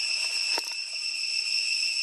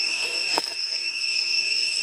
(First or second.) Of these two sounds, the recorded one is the first